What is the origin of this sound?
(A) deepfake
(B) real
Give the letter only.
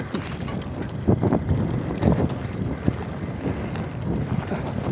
B